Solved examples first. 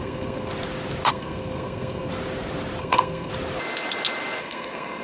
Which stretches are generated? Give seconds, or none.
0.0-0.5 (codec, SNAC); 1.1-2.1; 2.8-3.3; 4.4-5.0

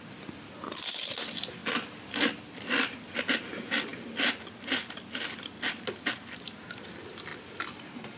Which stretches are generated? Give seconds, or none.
none

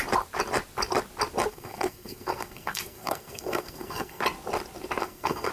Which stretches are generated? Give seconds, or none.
1.5-4.2 (codec, SNAC); 5.0-5.5

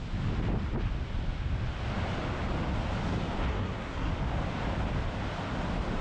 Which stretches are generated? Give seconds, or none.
3.5-4.1 (codec, SNAC)

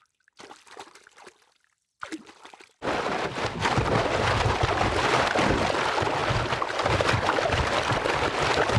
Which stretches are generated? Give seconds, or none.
none

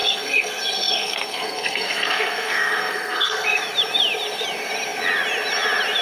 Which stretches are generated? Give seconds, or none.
0.0-3.6 (codec, SNAC)

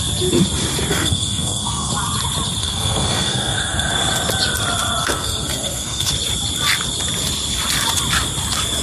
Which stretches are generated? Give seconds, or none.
0.9-1.9 (codec, SNAC); 2.6-3.9; 5.0-6.1

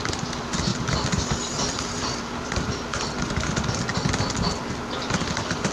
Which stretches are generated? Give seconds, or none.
none